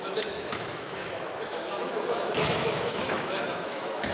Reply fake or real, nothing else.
fake